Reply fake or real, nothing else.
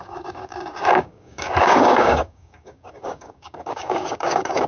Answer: fake